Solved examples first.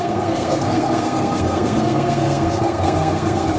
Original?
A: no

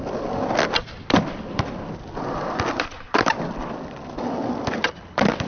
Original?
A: no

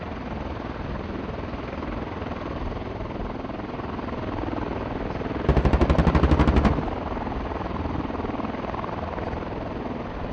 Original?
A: yes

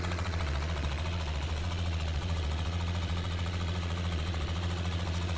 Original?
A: no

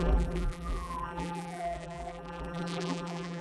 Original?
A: no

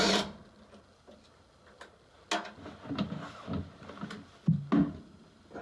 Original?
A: yes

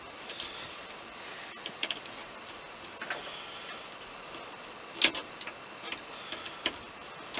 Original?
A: yes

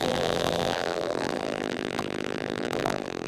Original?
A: no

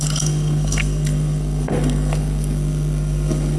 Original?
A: no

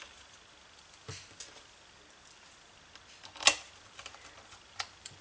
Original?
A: yes